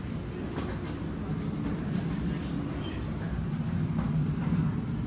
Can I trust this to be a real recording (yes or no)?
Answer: yes